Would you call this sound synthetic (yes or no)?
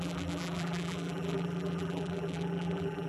yes